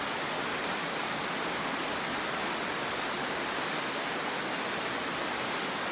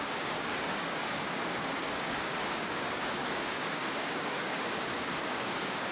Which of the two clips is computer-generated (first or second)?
second